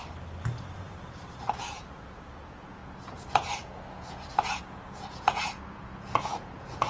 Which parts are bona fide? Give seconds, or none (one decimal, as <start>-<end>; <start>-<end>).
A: 0.0-1.6